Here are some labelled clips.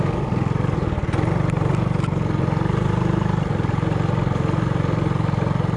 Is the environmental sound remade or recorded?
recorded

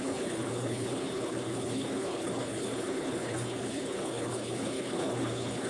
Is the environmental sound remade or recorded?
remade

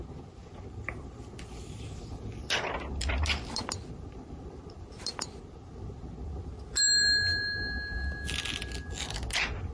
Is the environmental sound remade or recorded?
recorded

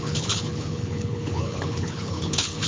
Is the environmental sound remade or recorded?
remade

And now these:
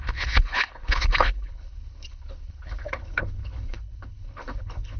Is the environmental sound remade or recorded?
remade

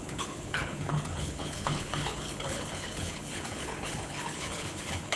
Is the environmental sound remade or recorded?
remade